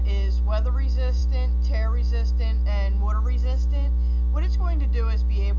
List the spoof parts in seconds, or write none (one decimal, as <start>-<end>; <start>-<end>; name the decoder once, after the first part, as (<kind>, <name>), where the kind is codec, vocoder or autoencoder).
none